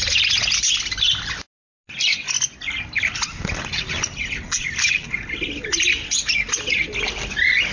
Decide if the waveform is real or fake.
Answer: real